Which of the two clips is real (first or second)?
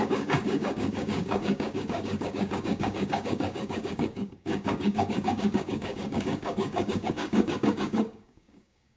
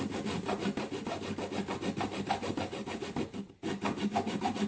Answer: second